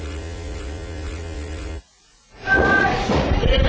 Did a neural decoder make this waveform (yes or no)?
yes